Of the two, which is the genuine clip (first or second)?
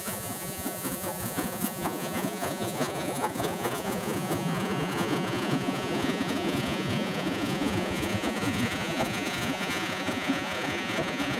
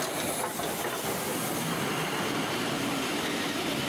second